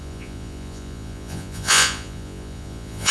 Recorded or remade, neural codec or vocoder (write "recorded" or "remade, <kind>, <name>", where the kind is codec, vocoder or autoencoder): remade, vocoder, Vocos